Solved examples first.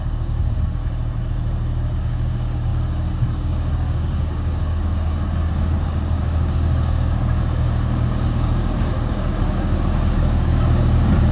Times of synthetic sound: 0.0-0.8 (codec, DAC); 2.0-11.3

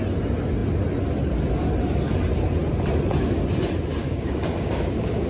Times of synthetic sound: 4.0-5.3 (codec, DAC)